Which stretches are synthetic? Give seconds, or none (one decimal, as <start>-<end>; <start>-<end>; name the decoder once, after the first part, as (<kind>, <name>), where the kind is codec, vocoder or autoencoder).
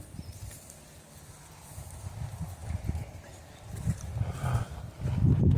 none